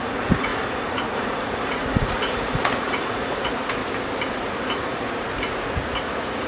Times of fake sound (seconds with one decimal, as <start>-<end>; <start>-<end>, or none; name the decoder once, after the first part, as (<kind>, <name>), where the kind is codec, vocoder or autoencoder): 0.0-3.8 (vocoder, Vocos); 4.3-6.5